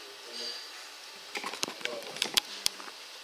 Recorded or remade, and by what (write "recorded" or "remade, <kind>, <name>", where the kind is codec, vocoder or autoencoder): remade, vocoder, BigVGAN v2